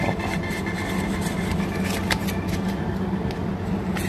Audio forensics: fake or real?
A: real